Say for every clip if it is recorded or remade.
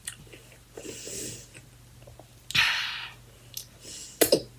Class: recorded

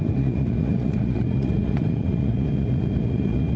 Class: remade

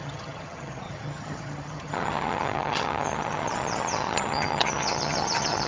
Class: remade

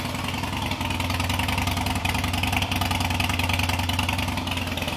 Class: recorded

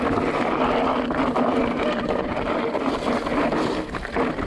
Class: recorded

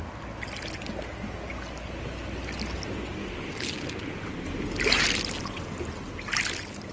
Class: recorded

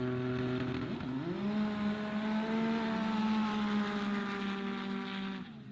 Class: recorded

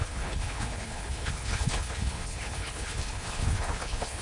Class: remade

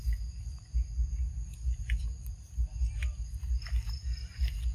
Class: recorded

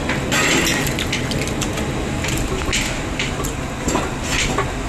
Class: recorded